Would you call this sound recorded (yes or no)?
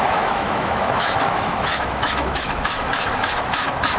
no